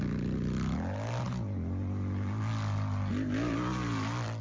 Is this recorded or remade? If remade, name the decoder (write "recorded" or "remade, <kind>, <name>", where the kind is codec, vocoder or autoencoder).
recorded